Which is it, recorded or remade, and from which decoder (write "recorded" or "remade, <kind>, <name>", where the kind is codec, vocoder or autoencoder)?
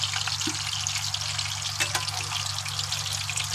recorded